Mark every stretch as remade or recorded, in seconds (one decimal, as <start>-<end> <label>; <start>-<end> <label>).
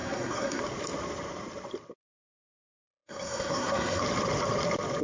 0.0-0.6 remade; 0.6-2.0 recorded; 2.0-4.0 remade; 4.0-5.0 recorded